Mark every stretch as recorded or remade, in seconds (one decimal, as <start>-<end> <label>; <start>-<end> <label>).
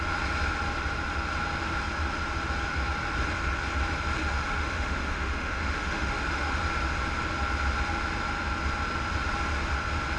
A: 0.0-4.2 recorded; 4.2-6.6 remade; 6.6-10.2 recorded